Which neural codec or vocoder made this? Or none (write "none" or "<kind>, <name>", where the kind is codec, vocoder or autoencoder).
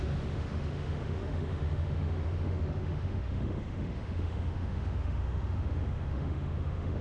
autoencoder, DAC-VAE